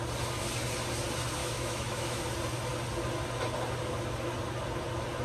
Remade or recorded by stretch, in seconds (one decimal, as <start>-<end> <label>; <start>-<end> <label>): 0.0-1.4 recorded; 1.4-2.2 remade; 2.2-5.2 recorded